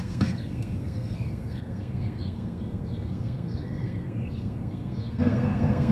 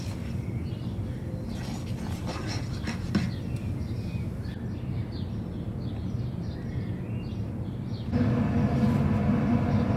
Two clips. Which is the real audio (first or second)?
second